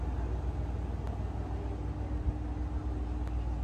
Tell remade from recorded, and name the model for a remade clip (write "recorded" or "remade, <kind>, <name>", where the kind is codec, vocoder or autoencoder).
recorded